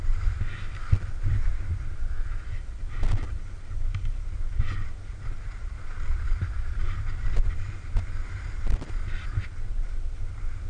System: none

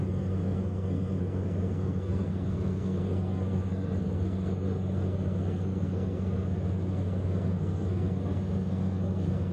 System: codec, SNAC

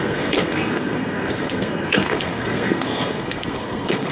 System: codec, SNAC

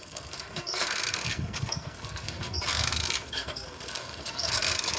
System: codec, SNAC